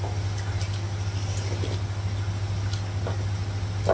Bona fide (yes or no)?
yes